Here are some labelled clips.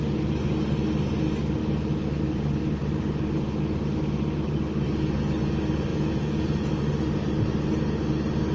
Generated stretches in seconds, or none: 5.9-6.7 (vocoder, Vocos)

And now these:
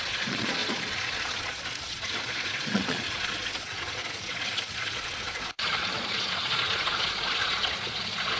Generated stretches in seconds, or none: 0.0-8.4 (vocoder, Vocos)

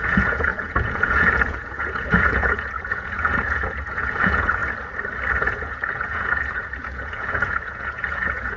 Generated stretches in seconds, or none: 0.0-4.6 (vocoder, Vocos); 5.3-8.6

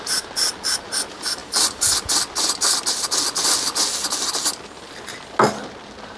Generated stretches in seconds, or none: none